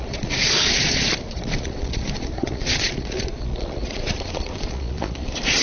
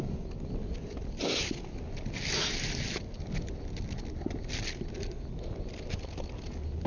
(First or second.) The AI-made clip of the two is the first